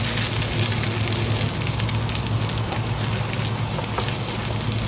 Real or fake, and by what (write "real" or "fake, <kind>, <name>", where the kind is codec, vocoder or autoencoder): real